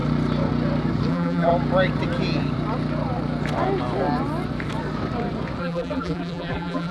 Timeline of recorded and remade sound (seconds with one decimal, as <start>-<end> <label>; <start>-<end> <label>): 0.0-1.1 recorded; 1.1-1.5 remade; 1.5-5.6 recorded; 5.6-6.9 remade